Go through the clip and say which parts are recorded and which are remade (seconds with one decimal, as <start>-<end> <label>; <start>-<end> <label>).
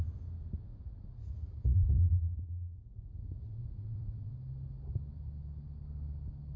0.0-0.7 recorded; 0.7-4.3 remade; 4.3-6.6 recorded